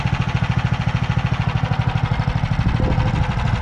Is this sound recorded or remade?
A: recorded